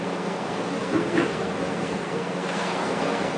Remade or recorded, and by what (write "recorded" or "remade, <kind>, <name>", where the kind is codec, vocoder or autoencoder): remade, codec, SNAC